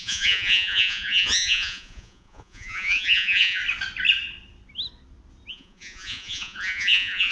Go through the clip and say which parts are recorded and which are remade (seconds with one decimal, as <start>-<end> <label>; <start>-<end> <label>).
0.0-3.6 remade; 3.6-5.5 recorded; 5.5-7.3 remade